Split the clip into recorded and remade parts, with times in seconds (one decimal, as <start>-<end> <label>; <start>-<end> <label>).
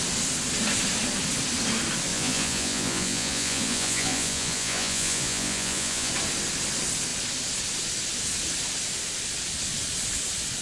0.0-2.1 recorded; 2.1-6.1 remade; 6.1-10.6 recorded